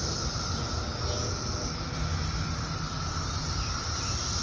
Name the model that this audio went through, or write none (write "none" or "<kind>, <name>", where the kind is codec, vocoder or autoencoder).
none